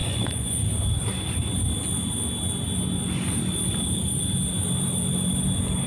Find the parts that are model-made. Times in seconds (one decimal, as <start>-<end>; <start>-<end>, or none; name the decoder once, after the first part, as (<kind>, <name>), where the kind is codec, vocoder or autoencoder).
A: 0.0-0.6 (vocoder, Vocos)